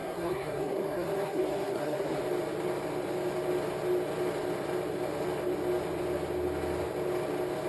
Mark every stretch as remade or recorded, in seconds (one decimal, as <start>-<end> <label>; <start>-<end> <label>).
0.0-2.2 remade; 2.2-7.7 recorded